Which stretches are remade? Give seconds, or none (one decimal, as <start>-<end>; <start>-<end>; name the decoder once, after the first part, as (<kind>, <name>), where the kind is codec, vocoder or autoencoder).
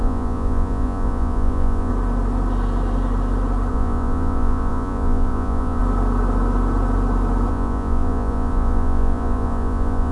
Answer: 0.0-1.9 (vocoder, Vocos); 3.7-5.8; 7.5-10.1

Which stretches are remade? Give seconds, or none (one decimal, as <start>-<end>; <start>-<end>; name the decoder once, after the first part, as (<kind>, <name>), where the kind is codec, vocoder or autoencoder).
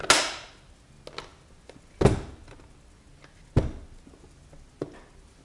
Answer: none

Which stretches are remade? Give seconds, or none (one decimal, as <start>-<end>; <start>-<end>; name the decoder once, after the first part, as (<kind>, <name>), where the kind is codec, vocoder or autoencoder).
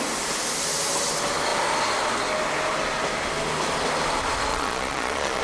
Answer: 4.5-5.4 (vocoder, Vocos)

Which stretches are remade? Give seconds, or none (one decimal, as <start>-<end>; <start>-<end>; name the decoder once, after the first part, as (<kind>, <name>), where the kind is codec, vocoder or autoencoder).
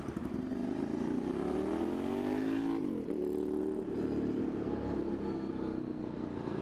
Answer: 4.4-6.6 (codec, SNAC)